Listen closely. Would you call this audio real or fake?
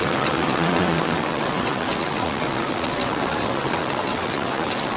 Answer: fake